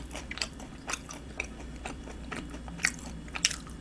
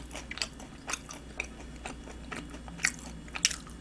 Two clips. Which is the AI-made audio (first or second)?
first